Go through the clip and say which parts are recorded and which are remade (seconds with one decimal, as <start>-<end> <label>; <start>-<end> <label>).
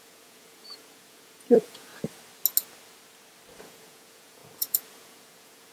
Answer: 0.0-1.9 remade; 1.9-3.6 recorded; 3.6-5.7 remade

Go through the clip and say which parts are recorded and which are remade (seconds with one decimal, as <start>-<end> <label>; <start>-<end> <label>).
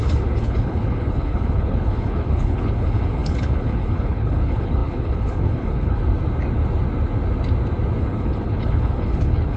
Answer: 0.0-6.0 remade; 6.0-8.0 recorded; 8.0-9.6 remade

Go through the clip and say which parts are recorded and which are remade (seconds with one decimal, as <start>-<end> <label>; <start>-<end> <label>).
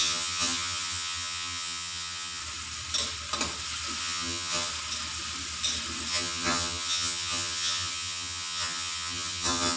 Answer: 0.0-2.4 remade; 2.4-4.0 recorded; 4.0-4.7 remade; 4.7-6.1 recorded; 6.1-9.8 remade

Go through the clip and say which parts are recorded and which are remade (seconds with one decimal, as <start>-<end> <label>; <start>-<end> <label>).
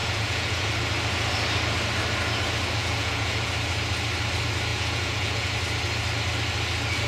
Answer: 0.0-0.7 remade; 0.7-2.8 recorded; 2.8-3.5 remade; 3.5-4.7 recorded; 4.7-5.5 remade; 5.5-7.1 recorded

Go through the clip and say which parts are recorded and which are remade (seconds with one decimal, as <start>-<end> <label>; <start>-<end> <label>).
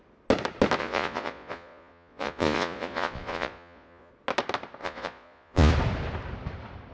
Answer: 0.0-0.8 recorded; 0.8-4.1 remade; 4.1-4.8 recorded; 4.8-5.7 remade; 5.7-6.9 recorded